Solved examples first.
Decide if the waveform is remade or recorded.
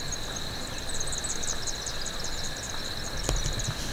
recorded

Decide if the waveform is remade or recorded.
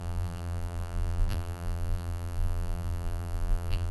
remade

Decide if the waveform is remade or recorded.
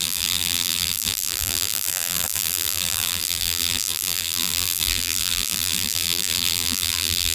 remade